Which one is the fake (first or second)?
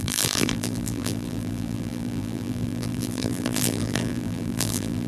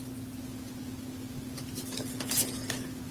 first